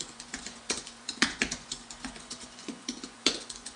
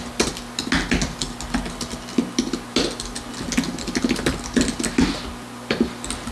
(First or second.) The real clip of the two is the second